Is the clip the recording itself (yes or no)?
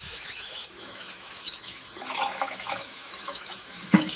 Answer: no